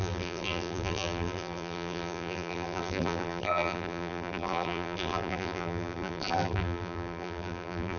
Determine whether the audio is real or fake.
fake